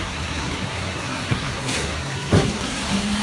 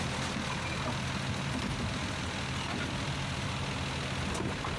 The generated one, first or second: first